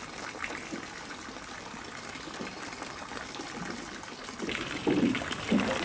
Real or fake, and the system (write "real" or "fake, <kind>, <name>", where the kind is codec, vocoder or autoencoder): real